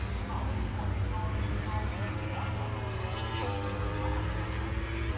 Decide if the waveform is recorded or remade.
recorded